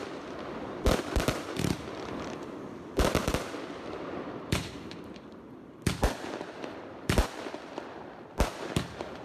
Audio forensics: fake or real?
fake